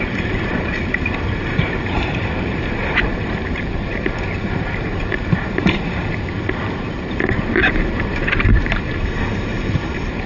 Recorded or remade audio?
remade